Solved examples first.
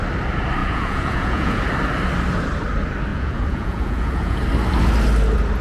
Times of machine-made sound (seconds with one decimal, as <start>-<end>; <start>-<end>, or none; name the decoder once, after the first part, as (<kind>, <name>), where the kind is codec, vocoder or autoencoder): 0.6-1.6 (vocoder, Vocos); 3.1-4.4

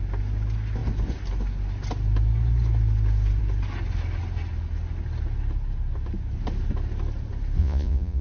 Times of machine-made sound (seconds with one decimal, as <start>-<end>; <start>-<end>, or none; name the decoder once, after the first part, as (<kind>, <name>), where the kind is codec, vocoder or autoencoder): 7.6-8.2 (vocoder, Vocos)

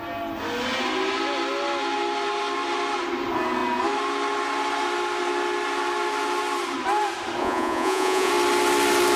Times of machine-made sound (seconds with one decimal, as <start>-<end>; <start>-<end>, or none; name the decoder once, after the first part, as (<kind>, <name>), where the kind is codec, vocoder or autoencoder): 7.4-8.3 (vocoder, Vocos)

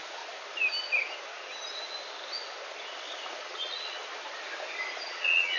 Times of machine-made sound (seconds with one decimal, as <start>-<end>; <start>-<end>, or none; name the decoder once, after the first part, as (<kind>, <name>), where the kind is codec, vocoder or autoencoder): 3.4-4.0 (vocoder, Vocos); 5.0-5.6